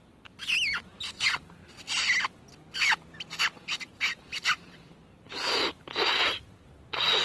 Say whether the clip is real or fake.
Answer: real